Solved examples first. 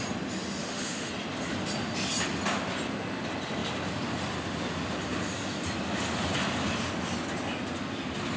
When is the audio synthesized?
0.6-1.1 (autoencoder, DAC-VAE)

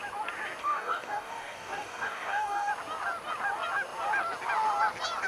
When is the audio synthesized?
0.6-2.7 (codec, DAC)

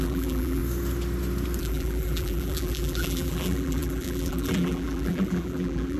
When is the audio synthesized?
0.0-0.6 (vocoder, BigVGAN v2); 1.6-6.0

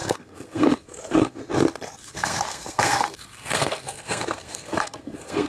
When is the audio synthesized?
0.0-1.4 (codec, SNAC); 2.0-5.5